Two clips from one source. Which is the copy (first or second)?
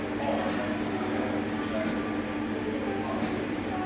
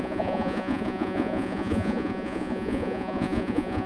second